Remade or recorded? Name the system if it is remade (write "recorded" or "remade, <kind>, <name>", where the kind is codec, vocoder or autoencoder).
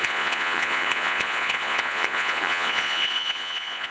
remade, vocoder, Vocos